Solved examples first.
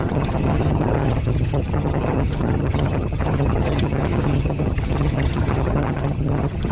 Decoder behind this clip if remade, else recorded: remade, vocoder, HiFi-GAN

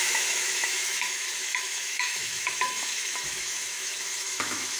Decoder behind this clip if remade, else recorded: remade, autoencoder, DAC-VAE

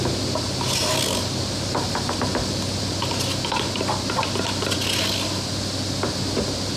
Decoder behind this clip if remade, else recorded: recorded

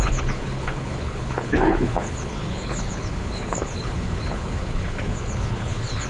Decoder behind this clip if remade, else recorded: remade, codec, HILCodec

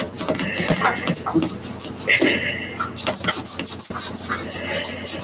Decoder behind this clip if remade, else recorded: recorded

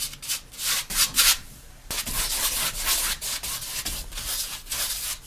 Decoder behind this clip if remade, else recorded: recorded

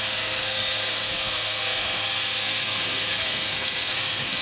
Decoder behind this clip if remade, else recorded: remade, codec, SNAC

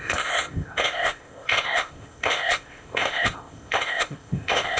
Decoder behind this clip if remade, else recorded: remade, codec, ZipCodec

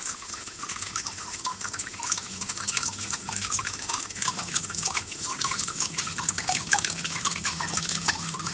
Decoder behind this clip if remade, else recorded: remade, autoencoder, DAC-VAE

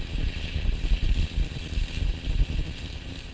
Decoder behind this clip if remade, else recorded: recorded